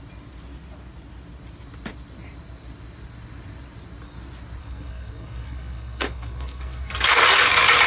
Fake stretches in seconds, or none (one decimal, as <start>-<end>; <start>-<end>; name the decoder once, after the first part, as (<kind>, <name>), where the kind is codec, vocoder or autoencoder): 4.6-7.2 (codec, SNAC)